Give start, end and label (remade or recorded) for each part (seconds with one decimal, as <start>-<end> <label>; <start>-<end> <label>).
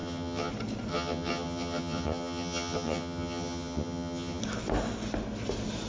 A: 0.0-0.5 remade; 0.5-0.9 recorded; 0.9-4.4 remade; 4.4-5.9 recorded